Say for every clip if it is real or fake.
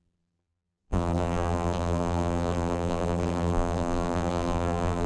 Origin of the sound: fake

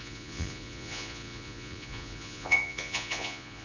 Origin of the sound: fake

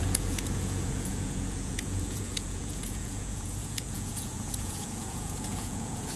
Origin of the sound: fake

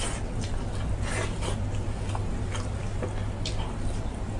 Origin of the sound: real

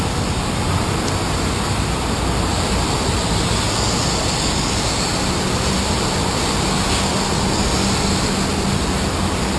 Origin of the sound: real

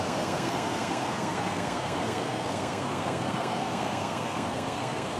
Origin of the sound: fake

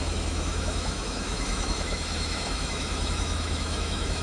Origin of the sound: fake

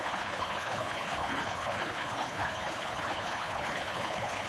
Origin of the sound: fake